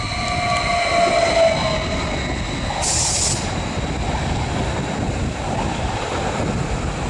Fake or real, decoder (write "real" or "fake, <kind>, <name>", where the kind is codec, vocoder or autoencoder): real